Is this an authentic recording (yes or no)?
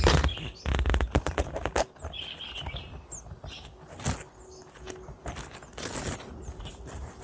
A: yes